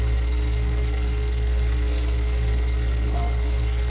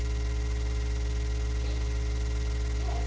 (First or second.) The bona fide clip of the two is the second